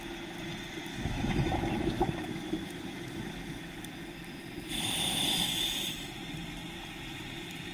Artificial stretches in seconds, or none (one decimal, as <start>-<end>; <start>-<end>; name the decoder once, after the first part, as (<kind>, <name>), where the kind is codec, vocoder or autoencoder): 0.9-3.9 (autoencoder, DAC-VAE)